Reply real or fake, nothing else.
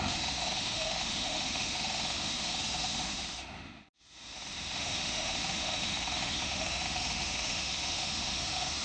fake